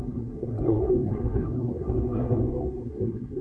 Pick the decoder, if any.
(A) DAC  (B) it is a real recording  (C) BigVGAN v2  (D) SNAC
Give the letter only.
D